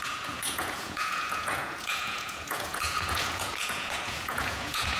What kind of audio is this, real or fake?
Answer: fake